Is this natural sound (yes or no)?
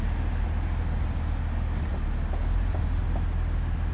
yes